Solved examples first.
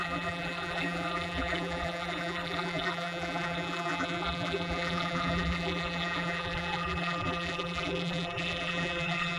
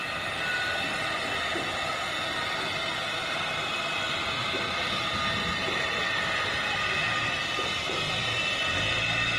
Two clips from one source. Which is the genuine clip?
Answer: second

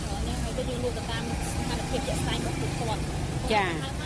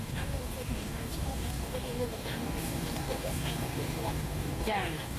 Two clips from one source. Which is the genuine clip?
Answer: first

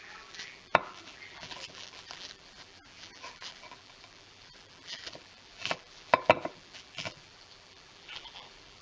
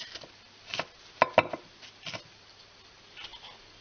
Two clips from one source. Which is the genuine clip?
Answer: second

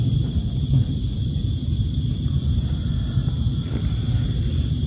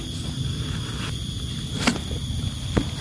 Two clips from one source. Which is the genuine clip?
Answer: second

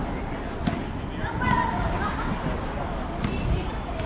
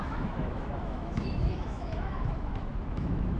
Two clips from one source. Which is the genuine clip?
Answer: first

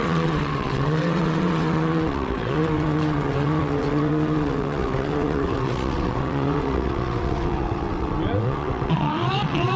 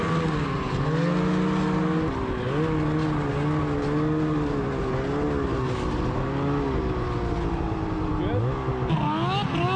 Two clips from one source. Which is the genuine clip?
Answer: second